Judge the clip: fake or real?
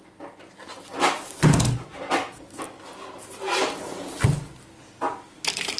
real